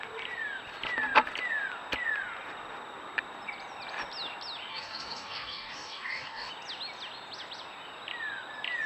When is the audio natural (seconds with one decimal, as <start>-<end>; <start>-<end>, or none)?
0.0-4.7; 6.5-8.9